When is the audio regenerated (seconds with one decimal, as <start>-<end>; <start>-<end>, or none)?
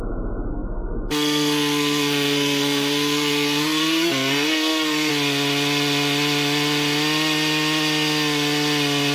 0.5-5.1